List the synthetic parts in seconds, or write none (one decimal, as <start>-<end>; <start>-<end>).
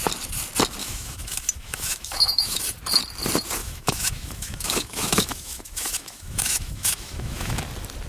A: 0.8-2.6; 3.6-7.6